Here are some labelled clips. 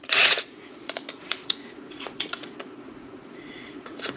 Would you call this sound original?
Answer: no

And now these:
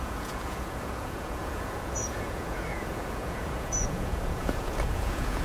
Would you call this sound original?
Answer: no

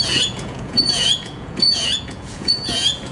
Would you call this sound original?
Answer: no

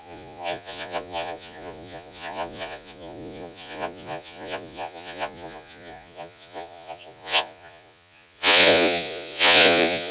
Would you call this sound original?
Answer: no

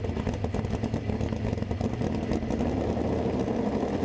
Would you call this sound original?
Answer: yes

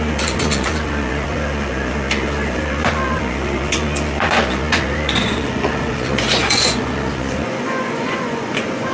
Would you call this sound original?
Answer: no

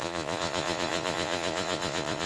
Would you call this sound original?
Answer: no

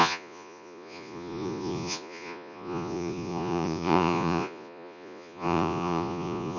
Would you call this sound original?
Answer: no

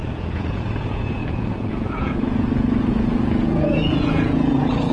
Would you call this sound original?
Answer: no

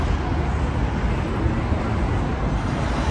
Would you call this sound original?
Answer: yes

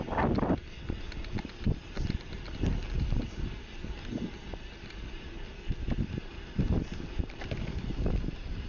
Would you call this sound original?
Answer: yes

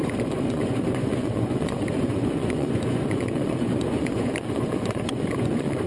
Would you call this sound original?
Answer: no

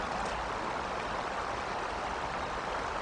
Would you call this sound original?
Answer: yes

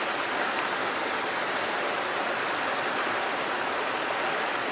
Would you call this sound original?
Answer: yes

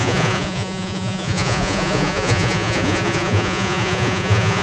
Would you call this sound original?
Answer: no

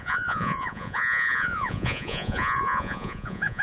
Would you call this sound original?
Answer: no